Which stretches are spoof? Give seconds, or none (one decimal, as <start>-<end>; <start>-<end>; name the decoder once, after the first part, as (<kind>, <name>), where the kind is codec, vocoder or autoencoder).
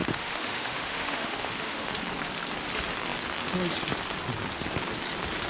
0.0-1.9 (autoencoder, DAC-VAE)